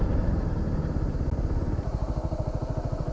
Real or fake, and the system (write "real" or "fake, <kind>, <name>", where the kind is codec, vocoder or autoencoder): real